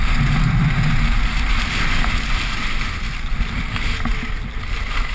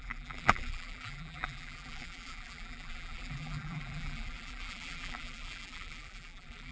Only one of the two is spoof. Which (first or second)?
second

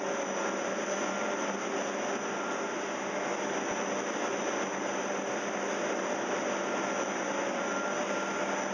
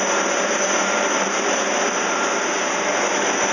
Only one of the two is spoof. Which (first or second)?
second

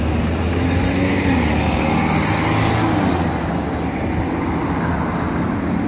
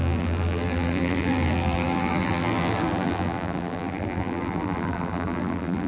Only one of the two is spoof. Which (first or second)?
second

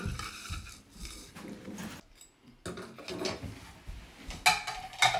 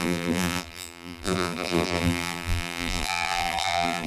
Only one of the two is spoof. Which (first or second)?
second